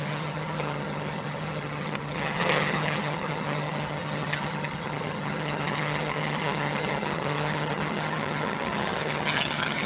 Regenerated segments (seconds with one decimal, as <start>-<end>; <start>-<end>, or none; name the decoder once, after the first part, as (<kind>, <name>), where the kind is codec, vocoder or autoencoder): 0.0-9.9 (vocoder, HiFi-GAN)